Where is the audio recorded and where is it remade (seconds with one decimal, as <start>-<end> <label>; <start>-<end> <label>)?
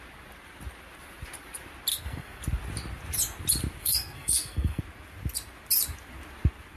0.0-1.9 recorded; 1.9-2.4 remade; 2.4-3.8 recorded; 3.8-4.8 remade; 4.8-6.8 recorded